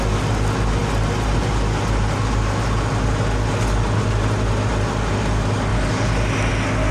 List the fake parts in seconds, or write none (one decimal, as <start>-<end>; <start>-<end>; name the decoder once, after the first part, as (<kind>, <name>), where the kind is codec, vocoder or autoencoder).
none